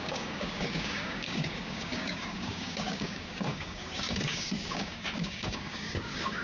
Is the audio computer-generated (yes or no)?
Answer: yes